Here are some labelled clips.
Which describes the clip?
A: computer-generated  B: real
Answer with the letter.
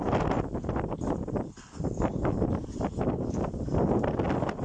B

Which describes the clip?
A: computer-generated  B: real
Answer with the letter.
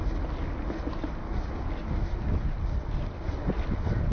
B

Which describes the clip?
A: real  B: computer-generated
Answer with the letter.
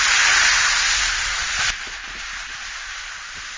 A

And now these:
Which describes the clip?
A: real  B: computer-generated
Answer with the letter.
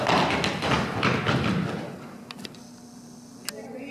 A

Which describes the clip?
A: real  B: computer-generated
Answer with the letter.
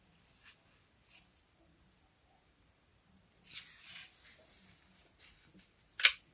A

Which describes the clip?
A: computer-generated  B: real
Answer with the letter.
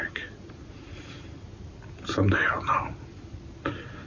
B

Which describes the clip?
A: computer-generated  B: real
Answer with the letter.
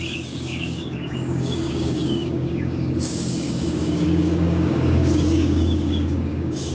A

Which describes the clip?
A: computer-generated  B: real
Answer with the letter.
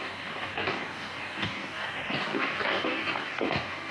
A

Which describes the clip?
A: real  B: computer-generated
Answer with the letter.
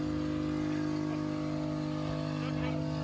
A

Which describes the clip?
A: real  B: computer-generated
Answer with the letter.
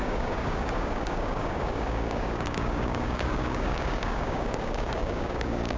B